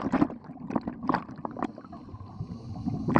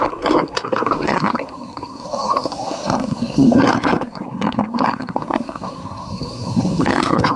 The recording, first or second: first